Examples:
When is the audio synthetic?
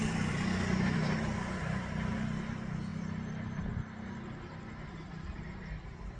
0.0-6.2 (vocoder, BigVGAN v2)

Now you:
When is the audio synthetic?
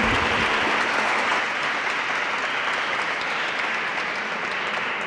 0.0-1.3 (vocoder, BigVGAN v2); 3.9-5.1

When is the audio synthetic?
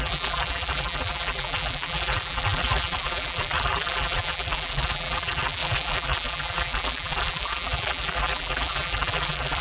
0.0-9.6 (vocoder, BigVGAN v2)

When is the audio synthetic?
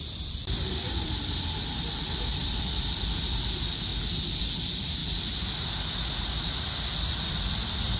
0.0-3.9 (vocoder, BigVGAN v2); 4.4-5.0; 6.1-8.0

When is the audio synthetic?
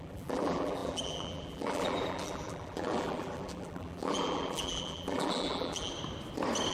0.0-5.9 (vocoder, BigVGAN v2)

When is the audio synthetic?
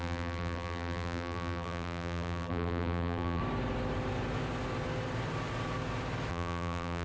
0.0-3.4 (vocoder, BigVGAN v2); 6.3-7.0